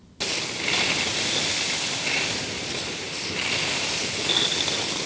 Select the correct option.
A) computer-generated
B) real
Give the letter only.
B